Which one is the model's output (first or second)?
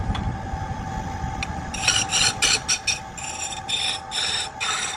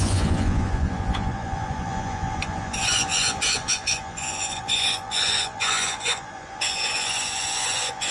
second